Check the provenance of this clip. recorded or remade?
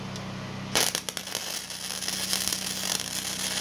recorded